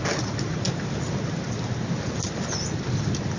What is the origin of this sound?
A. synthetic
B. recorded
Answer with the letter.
B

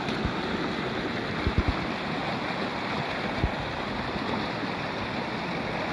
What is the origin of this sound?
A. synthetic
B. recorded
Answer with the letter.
B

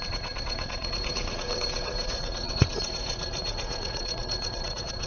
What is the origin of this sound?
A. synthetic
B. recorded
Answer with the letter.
A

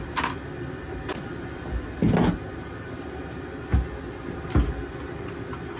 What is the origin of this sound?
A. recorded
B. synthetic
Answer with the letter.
A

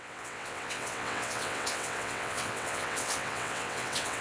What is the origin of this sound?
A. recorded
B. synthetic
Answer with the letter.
B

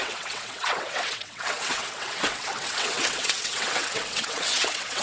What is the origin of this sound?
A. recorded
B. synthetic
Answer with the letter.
B